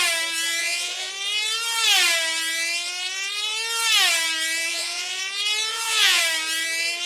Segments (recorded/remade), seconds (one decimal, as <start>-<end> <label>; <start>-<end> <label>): 0.0-0.6 recorded; 0.6-1.1 remade; 1.1-4.7 recorded; 4.7-5.2 remade; 5.2-5.7 recorded; 5.7-6.2 remade; 6.2-7.1 recorded